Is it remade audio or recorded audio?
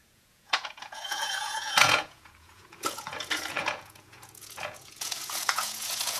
remade